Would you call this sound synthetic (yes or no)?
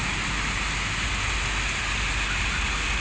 no